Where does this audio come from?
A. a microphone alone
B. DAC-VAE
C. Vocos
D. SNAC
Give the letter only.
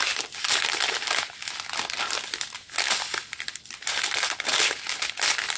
A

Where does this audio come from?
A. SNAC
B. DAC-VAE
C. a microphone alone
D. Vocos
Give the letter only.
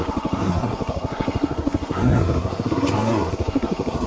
A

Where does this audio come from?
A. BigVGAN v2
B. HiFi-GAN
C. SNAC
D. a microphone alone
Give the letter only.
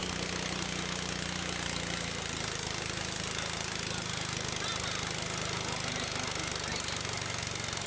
D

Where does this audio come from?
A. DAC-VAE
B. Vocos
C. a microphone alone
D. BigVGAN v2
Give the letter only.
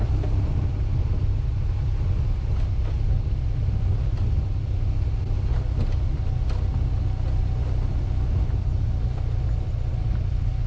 C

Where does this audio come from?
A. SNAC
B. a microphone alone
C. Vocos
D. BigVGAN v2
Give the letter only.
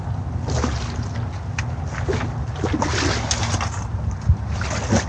B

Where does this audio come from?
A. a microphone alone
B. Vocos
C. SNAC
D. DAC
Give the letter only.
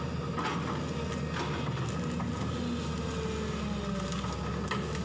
A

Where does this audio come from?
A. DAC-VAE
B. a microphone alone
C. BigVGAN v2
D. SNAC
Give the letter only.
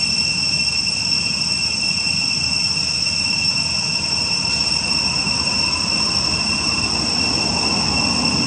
B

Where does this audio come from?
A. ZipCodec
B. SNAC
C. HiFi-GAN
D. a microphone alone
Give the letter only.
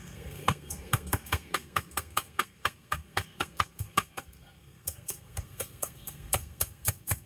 B